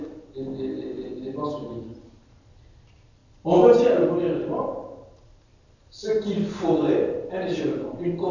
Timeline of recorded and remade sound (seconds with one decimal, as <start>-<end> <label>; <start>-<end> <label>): 0.0-8.3 recorded